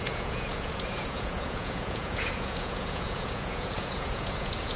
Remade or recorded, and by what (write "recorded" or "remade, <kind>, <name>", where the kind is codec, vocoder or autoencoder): remade, vocoder, Vocos